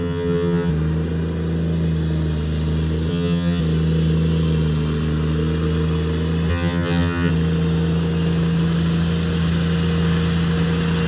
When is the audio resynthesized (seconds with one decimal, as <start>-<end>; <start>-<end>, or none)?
0.0-0.7; 3.1-3.6; 6.5-7.3